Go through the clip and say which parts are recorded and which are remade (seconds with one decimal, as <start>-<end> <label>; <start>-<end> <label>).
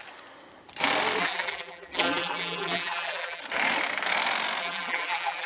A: 0.0-1.2 recorded; 1.2-3.4 remade; 3.4-4.6 recorded; 4.6-5.5 remade